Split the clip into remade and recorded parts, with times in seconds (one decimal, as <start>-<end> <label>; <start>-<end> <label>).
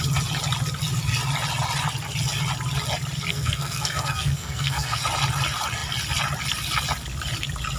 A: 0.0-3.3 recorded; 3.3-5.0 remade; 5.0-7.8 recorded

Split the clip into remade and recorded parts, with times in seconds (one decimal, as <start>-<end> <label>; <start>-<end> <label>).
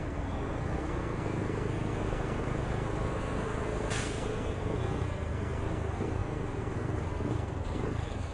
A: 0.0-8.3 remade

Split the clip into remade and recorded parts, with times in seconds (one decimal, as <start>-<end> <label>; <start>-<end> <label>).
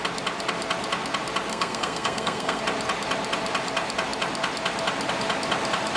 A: 0.0-1.5 recorded; 1.5-2.6 remade; 2.6-6.0 recorded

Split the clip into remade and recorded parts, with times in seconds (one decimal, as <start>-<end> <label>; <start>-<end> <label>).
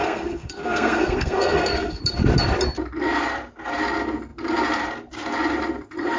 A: 0.0-2.0 remade; 2.0-6.2 recorded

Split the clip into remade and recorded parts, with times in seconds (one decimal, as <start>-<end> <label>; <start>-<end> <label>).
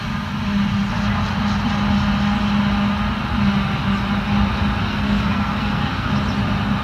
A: 0.0-4.8 recorded; 4.8-6.1 remade; 6.1-6.8 recorded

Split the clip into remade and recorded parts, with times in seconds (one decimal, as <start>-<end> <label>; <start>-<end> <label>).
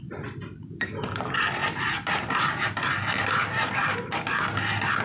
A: 0.0-5.0 recorded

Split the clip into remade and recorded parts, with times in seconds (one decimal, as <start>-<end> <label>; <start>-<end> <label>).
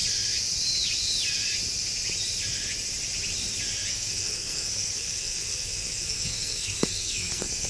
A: 0.0-3.9 recorded; 3.9-7.7 remade